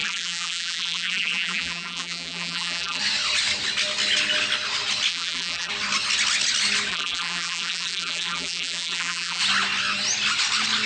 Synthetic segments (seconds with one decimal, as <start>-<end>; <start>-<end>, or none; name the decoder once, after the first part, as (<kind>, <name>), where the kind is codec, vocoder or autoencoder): 0.0-3.0 (vocoder, BigVGAN v2); 5.1-5.7; 6.9-9.4